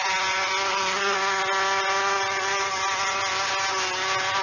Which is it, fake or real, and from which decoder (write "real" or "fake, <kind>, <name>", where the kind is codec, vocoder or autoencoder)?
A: real